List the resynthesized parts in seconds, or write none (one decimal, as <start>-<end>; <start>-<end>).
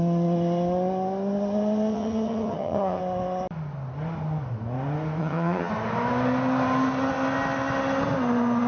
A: 1.9-3.0; 5.2-5.7